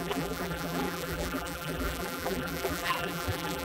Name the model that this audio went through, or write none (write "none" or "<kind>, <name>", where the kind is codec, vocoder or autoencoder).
vocoder, BigVGAN v2